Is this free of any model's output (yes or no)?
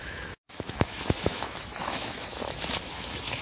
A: no